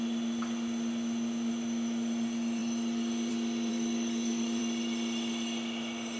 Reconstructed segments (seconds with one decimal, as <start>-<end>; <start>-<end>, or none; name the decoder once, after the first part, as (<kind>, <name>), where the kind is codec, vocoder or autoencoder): 3.7-4.6 (codec, DAC)